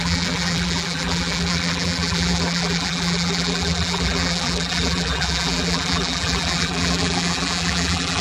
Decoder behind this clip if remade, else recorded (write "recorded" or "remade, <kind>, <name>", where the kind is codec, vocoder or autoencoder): remade, vocoder, BigVGAN v2